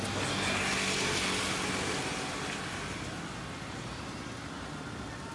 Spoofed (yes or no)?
no